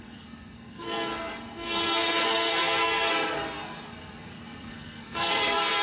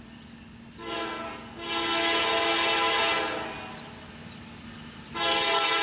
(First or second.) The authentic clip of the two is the second